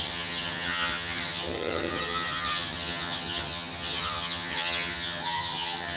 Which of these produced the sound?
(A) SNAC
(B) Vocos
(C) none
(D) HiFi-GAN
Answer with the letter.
D